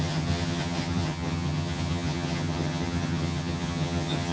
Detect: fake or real fake